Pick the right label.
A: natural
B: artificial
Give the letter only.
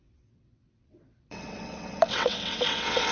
B